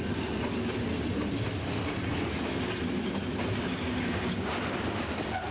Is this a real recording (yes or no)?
yes